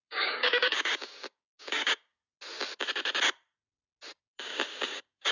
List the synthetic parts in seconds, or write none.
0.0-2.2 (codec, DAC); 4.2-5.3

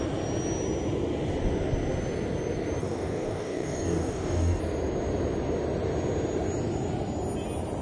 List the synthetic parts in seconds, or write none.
2.8-4.6 (codec, DAC)

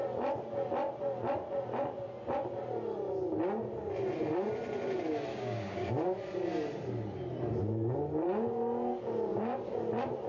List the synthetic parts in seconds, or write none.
5.3-5.9 (codec, DAC); 9.3-9.8

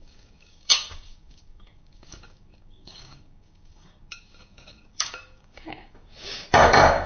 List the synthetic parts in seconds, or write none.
0.0-7.1 (codec, DAC)